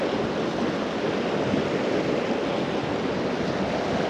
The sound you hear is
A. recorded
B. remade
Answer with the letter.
A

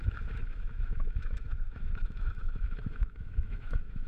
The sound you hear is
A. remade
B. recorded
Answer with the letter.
A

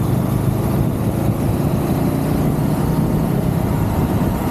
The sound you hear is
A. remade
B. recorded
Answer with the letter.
B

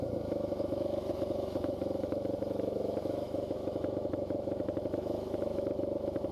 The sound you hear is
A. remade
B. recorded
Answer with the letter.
A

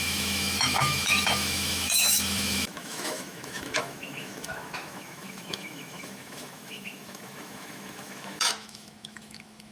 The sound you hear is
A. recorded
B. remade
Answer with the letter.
B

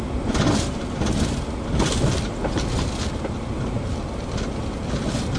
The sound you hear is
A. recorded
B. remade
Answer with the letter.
A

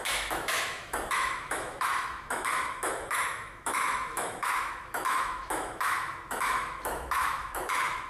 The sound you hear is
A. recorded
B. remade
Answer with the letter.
B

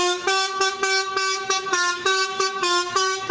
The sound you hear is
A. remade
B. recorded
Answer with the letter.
A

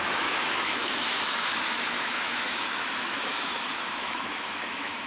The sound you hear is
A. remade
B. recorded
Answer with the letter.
A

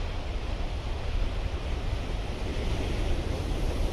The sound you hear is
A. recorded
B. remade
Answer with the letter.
A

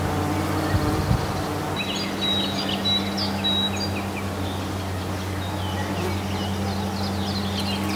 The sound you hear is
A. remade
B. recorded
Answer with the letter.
B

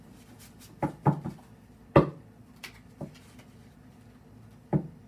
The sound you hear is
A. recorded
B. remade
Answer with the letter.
A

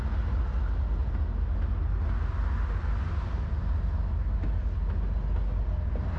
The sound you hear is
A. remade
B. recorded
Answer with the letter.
B